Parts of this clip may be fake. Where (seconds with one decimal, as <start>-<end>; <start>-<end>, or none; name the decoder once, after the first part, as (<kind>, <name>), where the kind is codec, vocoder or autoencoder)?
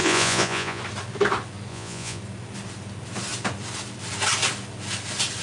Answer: 0.0-0.8 (vocoder, Vocos); 1.7-2.2